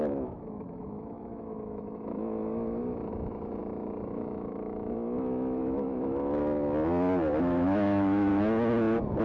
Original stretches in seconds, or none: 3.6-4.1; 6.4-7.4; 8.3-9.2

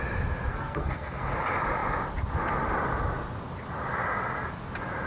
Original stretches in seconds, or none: 0.0-0.5; 1.3-5.1

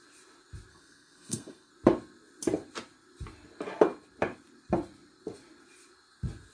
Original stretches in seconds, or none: 0.0-0.7; 1.7-6.5

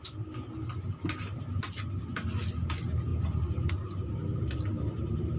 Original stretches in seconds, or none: 0.0-5.4

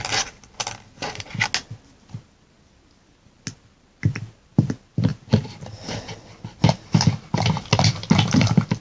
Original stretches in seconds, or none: 0.0-8.8

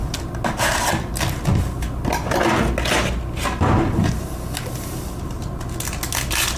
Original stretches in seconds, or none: 0.0-6.6